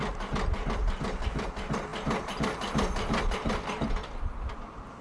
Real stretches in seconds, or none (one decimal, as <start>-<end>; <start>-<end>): 0.0-5.0